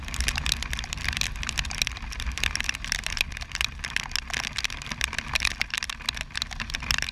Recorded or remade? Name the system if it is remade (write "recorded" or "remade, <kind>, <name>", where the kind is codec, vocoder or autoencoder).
recorded